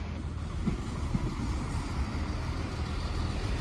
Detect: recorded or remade recorded